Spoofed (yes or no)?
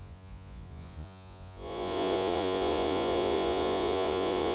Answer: yes